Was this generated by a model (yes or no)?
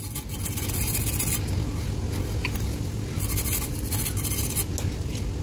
no